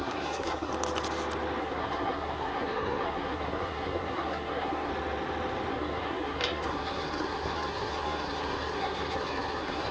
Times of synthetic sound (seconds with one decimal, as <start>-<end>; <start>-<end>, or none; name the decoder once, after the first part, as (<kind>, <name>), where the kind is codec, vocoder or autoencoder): 0.0-0.7 (codec, SNAC); 1.6-4.9; 5.7-9.9